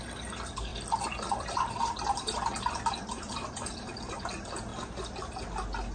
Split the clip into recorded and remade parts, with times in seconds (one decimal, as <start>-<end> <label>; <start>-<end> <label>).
0.0-0.7 recorded; 0.7-4.2 remade; 4.2-5.9 recorded